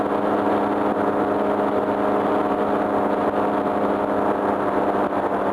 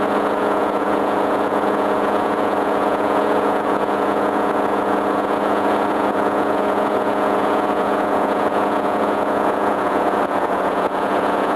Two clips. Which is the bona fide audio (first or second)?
first